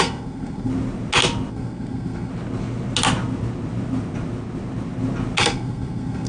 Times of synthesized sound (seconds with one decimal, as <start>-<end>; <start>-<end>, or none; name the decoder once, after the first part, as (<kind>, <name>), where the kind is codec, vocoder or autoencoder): 0.0-0.7 (codec, SNAC); 1.5-2.3; 5.4-6.3